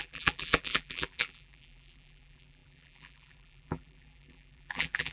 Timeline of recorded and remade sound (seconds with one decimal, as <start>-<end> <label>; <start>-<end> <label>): 0.0-5.1 remade